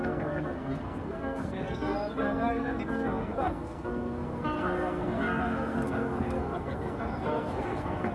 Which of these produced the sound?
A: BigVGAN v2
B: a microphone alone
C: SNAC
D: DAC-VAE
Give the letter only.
C